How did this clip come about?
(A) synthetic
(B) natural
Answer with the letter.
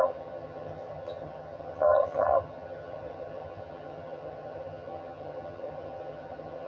A